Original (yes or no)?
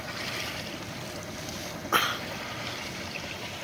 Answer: no